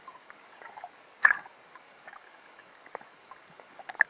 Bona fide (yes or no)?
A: no